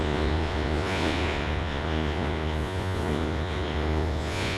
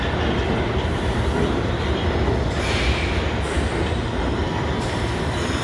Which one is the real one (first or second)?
second